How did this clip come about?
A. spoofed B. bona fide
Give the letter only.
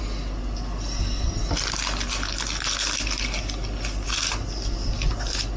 B